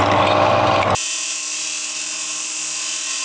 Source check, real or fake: real